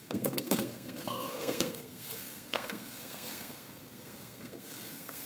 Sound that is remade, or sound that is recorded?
remade